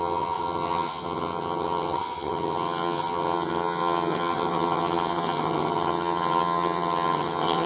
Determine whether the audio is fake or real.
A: fake